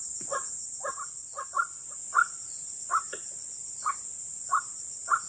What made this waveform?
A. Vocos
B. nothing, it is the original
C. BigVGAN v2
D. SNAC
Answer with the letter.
B